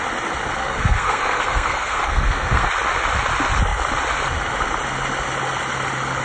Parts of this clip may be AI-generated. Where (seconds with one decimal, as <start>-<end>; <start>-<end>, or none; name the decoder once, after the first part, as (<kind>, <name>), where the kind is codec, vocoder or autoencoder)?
0.6-2.7 (codec, SNAC)